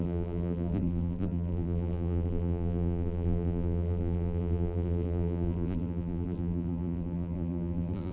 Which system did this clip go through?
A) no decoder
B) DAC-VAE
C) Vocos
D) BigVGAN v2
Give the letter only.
D